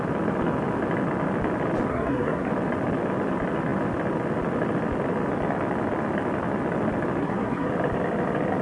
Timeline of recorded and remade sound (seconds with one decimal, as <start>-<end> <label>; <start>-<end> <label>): 0.0-1.9 recorded; 1.9-2.5 remade; 2.5-7.2 recorded; 7.2-7.7 remade; 7.7-8.6 recorded